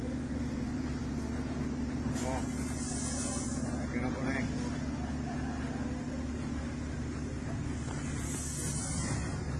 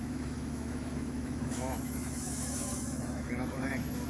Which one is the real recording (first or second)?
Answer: first